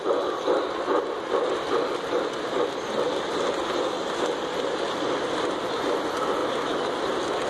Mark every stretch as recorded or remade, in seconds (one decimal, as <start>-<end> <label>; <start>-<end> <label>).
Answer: 0.0-7.5 recorded